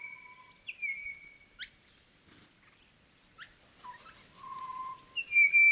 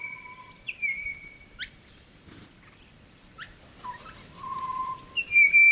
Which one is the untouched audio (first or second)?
first